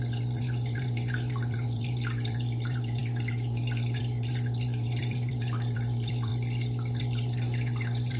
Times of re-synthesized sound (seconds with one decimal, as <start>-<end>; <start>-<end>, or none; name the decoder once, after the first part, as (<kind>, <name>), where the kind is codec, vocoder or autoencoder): 0.0-6.3 (vocoder, BigVGAN v2); 7.0-8.2